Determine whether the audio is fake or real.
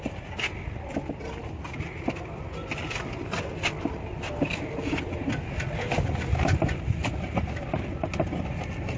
real